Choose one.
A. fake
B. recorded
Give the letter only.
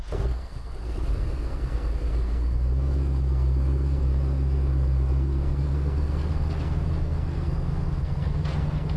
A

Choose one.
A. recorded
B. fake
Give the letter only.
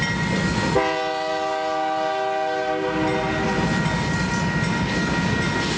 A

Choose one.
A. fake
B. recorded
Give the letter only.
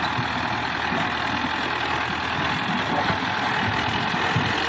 B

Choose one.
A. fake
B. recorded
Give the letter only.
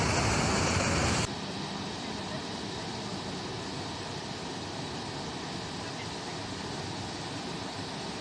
B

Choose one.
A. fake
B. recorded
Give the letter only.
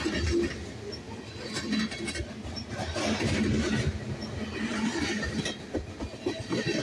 B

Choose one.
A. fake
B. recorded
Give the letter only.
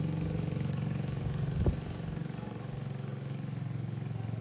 A